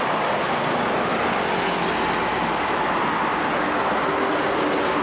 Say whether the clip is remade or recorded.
recorded